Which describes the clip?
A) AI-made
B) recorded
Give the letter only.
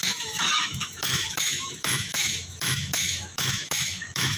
A